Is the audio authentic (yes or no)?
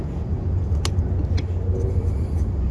yes